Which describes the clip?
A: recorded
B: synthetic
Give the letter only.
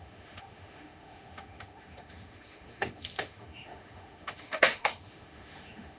B